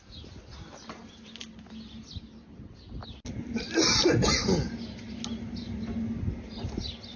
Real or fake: real